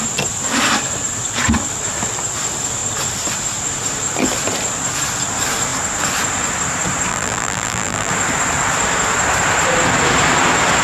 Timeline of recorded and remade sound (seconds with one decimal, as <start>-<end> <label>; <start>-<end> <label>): 0.0-7.1 recorded; 7.1-8.1 remade; 8.1-10.8 recorded